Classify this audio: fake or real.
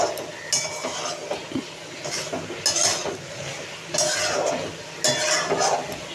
real